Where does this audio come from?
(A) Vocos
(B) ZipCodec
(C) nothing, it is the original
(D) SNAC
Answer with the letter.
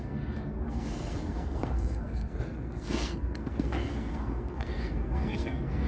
D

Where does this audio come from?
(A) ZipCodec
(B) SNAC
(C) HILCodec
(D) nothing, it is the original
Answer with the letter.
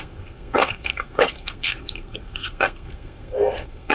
B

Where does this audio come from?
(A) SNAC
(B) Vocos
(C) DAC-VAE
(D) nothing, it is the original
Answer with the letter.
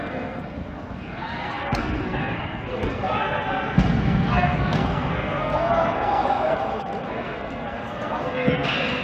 A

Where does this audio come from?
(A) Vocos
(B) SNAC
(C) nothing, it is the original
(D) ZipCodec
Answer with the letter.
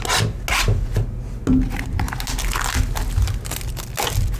C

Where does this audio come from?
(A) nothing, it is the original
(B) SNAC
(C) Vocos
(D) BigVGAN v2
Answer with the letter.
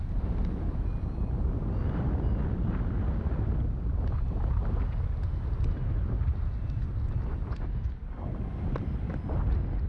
A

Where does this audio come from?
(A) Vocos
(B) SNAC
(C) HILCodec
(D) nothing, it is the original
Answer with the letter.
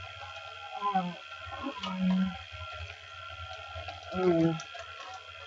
D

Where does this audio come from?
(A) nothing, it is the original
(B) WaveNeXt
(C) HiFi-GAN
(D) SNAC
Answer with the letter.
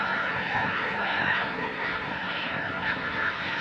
D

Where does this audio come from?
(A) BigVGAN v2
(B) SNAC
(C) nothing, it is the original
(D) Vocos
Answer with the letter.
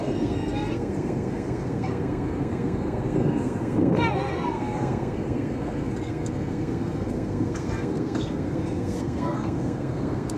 B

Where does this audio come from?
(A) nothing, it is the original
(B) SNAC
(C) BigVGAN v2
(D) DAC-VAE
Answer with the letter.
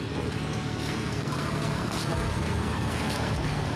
B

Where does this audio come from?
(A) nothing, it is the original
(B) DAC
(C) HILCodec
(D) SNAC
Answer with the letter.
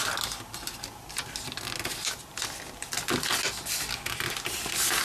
A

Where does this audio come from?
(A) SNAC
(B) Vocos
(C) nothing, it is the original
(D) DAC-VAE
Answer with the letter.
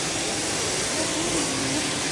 C